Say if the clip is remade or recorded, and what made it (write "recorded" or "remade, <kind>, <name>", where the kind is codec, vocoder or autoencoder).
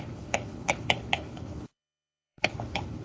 remade, codec, HILCodec